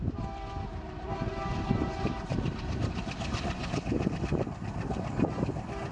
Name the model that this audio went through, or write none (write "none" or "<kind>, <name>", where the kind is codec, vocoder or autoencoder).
vocoder, BigVGAN v2